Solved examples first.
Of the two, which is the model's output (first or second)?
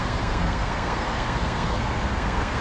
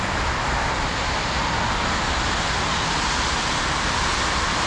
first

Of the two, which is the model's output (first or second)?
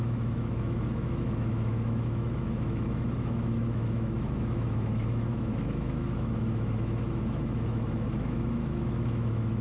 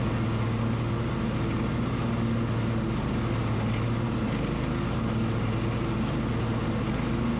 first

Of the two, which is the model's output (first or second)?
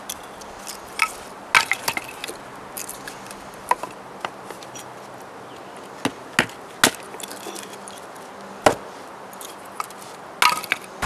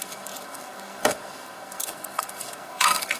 second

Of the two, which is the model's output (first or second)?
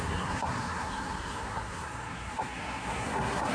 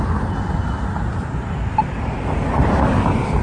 first